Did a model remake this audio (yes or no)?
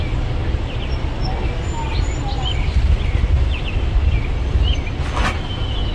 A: no